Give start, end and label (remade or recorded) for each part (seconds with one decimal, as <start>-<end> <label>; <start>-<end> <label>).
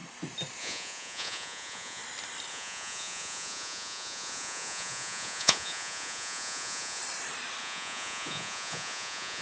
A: 0.0-0.6 recorded; 0.6-2.0 remade; 2.0-2.5 recorded; 2.5-7.0 remade; 7.0-7.6 recorded; 7.6-9.4 remade